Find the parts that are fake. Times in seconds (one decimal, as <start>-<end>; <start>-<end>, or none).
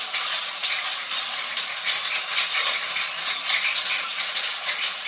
0.0-0.9; 4.0-5.1